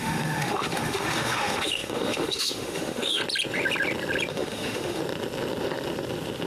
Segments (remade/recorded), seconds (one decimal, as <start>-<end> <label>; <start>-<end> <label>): 0.0-3.2 remade; 3.2-4.3 recorded; 4.3-5.0 remade; 5.0-6.5 recorded